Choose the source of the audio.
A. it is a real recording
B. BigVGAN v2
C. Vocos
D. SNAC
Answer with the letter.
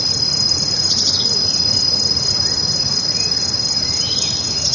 B